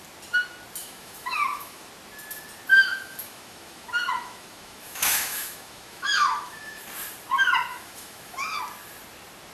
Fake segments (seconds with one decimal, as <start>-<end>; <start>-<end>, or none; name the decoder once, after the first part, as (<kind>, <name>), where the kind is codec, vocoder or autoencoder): 0.8-1.9 (autoencoder, DAC-VAE); 2.7-6.8; 7.7-8.6